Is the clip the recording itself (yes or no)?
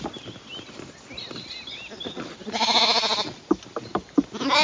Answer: yes